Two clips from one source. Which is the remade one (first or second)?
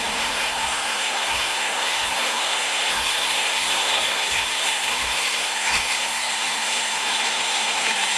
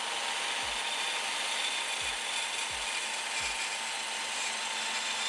first